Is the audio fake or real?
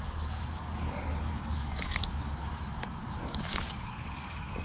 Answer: fake